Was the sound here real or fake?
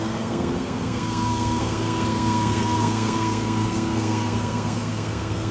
fake